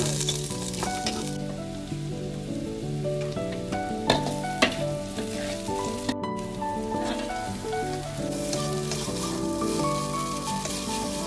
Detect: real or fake real